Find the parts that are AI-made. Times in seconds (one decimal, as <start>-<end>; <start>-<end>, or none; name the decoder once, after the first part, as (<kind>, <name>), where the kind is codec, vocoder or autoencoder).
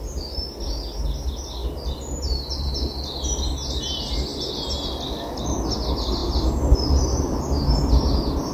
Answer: 1.6-2.7 (vocoder, BigVGAN v2)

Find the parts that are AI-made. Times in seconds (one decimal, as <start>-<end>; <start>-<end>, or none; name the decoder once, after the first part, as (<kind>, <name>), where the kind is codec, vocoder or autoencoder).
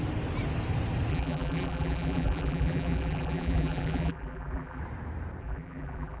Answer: 1.1-4.8 (vocoder, BigVGAN v2); 5.4-6.2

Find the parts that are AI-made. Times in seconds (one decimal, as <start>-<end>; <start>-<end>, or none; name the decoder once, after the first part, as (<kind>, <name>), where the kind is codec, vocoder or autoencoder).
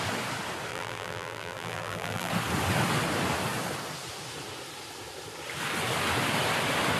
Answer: 0.7-2.3 (vocoder, BigVGAN v2)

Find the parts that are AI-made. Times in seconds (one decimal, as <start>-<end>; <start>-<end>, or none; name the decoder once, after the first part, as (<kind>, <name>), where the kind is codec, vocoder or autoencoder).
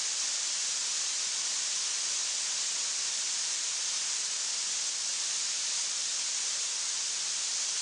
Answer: 5.1-5.8 (vocoder, BigVGAN v2)